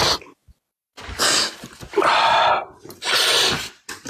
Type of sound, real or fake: real